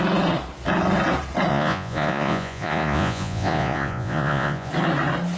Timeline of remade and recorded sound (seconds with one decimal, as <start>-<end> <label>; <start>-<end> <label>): 0.0-1.5 recorded; 1.5-4.7 remade; 4.7-5.4 recorded